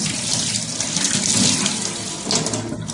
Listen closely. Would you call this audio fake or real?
real